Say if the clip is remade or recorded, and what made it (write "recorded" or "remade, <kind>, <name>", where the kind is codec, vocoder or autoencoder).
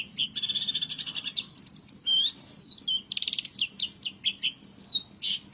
recorded